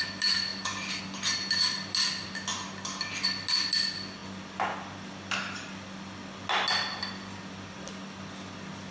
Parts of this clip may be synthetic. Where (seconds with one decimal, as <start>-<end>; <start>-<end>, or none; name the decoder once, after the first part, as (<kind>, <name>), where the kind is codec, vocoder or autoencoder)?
none